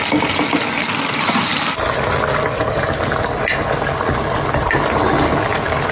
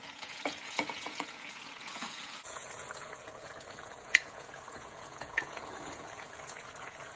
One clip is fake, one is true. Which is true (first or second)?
first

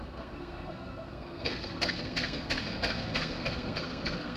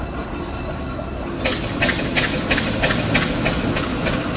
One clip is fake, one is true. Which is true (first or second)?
second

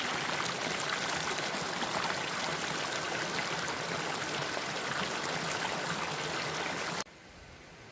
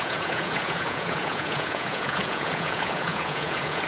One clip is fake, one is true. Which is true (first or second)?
first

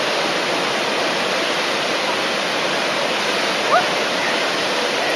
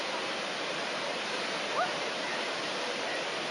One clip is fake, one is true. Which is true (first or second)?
first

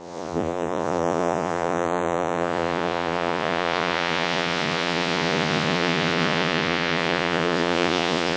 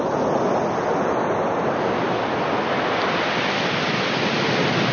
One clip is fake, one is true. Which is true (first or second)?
second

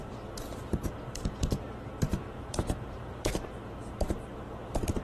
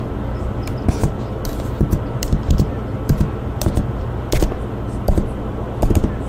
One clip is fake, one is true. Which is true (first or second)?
second